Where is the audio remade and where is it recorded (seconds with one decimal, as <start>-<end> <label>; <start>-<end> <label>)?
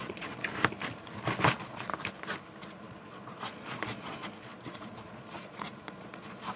0.0-0.4 remade; 0.4-1.5 recorded; 1.5-1.9 remade; 1.9-2.8 recorded; 2.8-6.6 remade